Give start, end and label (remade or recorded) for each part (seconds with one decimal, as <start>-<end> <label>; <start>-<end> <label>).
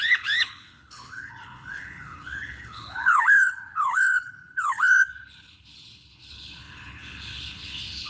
0.0-8.1 remade